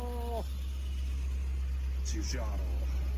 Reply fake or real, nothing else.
real